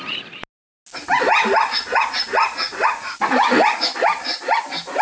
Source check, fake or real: real